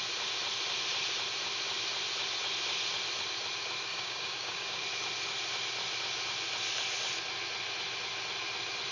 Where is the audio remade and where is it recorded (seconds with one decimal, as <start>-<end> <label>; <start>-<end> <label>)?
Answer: 0.0-3.9 recorded; 3.9-4.8 remade; 4.8-8.9 recorded